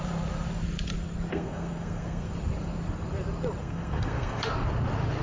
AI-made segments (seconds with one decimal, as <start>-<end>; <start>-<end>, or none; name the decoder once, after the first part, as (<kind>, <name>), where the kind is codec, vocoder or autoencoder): 1.3-2.3 (codec, SNAC); 3.6-4.5